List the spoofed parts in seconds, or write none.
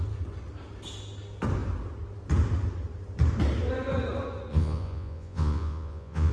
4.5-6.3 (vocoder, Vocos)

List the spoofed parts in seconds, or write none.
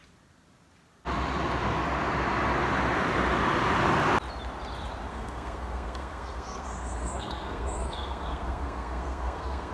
5.1-9.7 (codec, SNAC)